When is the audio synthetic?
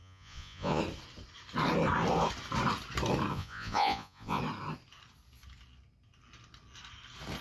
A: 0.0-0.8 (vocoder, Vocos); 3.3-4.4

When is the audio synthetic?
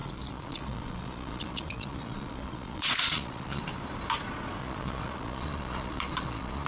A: 0.0-3.6 (vocoder, Vocos); 4.6-6.7